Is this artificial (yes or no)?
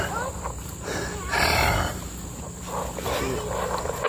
no